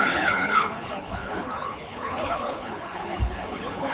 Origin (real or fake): fake